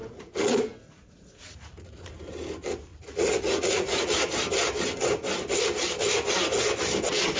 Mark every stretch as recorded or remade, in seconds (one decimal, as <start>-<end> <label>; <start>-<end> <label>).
0.0-2.1 remade; 2.1-2.9 recorded; 2.9-4.1 remade; 4.1-7.4 recorded